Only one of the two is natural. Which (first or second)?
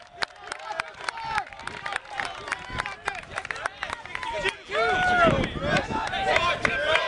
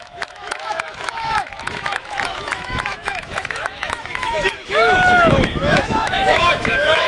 first